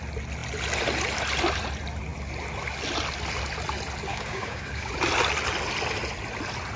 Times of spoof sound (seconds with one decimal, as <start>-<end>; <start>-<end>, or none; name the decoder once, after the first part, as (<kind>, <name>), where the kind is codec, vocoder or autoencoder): 4.1-4.9 (codec, DAC)